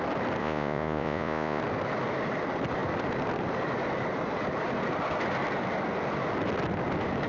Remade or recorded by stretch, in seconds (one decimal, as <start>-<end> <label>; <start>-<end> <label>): 0.0-0.4 recorded; 0.4-1.6 remade; 1.6-7.3 recorded